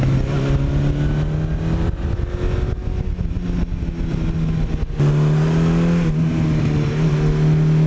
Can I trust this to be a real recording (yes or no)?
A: yes